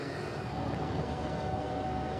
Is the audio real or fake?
fake